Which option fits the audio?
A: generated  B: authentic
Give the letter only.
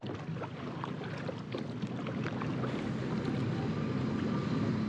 B